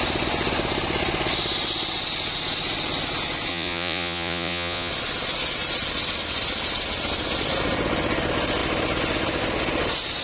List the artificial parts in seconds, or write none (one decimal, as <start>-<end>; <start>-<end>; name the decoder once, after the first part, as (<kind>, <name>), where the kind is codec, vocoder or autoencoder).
3.5-4.9 (vocoder, Vocos)